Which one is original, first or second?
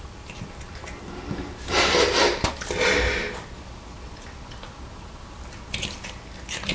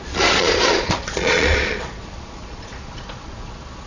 first